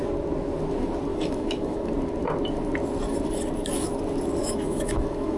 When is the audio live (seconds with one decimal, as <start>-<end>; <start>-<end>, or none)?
0.0-1.1; 1.9-4.4